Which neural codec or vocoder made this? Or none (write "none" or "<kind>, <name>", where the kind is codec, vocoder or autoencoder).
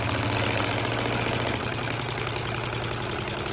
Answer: none